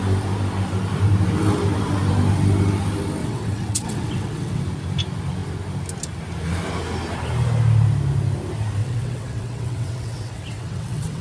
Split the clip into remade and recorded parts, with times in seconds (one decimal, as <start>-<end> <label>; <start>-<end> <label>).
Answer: 0.0-3.2 recorded; 3.2-4.6 remade; 4.6-8.8 recorded; 8.8-11.2 remade